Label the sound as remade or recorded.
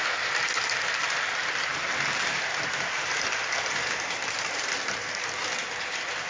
recorded